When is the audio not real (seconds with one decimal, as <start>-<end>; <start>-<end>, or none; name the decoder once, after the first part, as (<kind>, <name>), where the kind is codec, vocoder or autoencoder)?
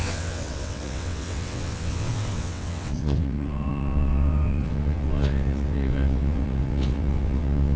0.0-7.8 (vocoder, WaveNeXt)